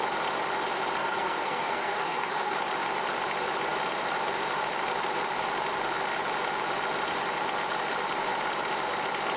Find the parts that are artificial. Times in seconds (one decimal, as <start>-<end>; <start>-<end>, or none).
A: 1.0-2.6